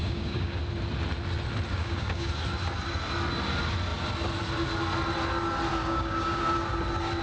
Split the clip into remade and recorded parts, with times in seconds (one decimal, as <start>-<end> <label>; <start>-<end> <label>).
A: 0.0-0.6 remade; 0.6-1.7 recorded; 1.7-2.3 remade; 2.3-5.8 recorded; 5.8-6.4 remade; 6.4-7.2 recorded